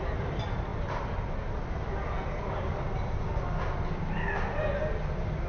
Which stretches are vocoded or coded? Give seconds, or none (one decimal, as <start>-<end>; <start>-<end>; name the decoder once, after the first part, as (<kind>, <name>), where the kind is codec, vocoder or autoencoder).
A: none